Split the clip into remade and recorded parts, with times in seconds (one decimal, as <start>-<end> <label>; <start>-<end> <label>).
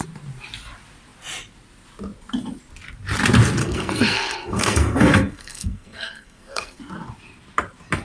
0.0-3.6 recorded; 3.6-6.8 remade; 6.8-8.0 recorded